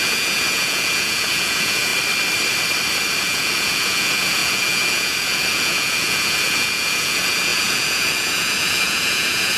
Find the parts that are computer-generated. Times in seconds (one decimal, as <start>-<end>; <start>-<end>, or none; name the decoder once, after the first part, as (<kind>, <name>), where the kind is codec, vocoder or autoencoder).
0.0-1.9 (vocoder, Vocos); 3.2-9.6